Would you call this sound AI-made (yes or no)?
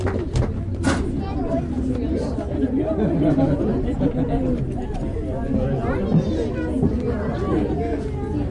no